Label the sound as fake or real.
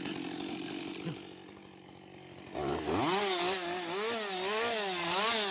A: real